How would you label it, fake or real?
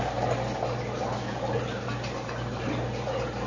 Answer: real